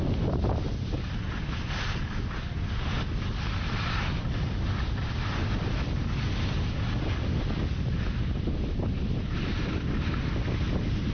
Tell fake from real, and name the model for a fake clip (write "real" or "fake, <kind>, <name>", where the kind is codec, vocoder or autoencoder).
real